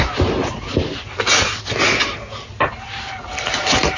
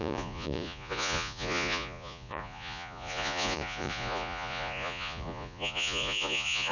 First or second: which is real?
first